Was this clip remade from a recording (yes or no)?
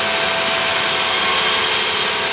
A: no